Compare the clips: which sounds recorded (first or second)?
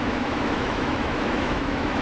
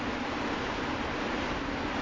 second